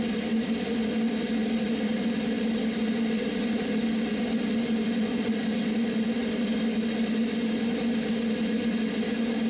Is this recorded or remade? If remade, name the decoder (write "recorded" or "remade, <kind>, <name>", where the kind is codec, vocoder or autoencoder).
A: recorded